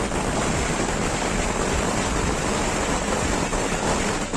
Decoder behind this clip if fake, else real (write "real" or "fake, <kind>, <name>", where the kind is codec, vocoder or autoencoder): real